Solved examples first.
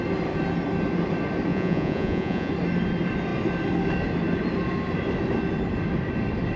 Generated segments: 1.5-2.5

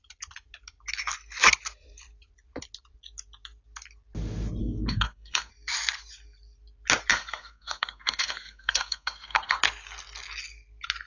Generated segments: 4.6-5.5; 7.1-9.6

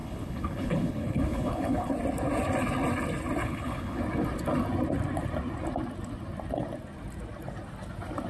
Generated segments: 0.0-1.9; 3.4-4.0